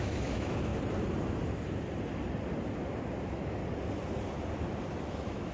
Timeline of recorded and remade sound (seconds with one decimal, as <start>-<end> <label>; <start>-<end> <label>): 0.0-0.7 remade; 0.7-3.2 recorded; 3.2-3.6 remade; 3.6-5.1 recorded; 5.1-5.5 remade